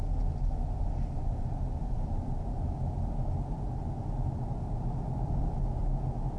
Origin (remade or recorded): recorded